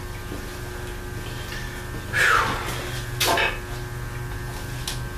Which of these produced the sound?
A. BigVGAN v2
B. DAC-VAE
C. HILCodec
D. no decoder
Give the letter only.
D